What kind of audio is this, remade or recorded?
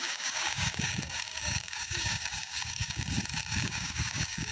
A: remade